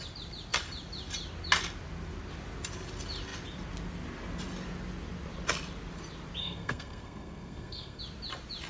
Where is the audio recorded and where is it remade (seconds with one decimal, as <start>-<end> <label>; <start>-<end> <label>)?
0.0-6.4 recorded; 6.4-8.0 remade; 8.0-8.7 recorded